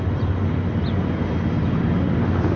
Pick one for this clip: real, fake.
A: real